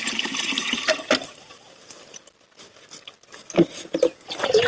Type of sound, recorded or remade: recorded